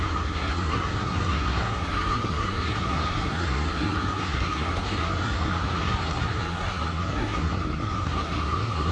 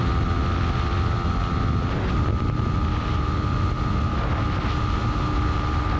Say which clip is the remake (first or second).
first